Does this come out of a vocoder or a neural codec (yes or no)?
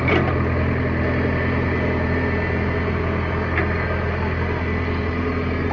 no